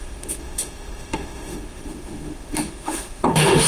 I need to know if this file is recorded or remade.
remade